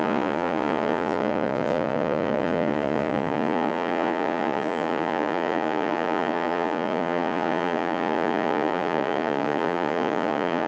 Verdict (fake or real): fake